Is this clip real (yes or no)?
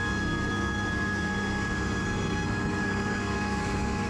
no